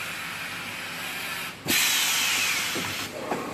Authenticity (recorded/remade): recorded